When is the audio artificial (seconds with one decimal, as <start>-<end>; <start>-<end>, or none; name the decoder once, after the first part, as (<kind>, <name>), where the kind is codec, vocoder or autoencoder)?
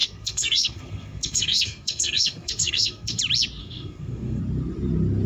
0.0-3.2 (codec, SNAC); 3.6-4.4